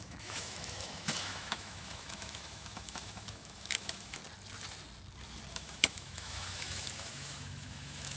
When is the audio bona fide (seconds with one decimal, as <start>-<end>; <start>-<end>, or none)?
4.2-5.5